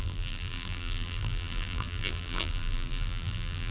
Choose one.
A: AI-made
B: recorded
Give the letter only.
A